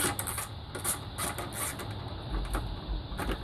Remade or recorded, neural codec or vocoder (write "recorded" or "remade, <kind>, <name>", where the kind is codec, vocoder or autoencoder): recorded